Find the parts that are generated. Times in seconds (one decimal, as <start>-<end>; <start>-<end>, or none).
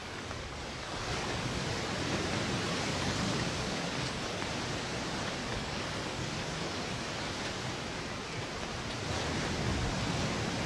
0.0-1.9; 2.9-4.4; 5.4-7.3